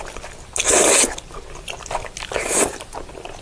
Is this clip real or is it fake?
real